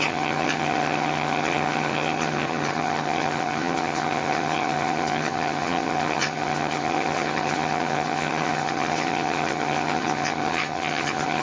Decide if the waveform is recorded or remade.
remade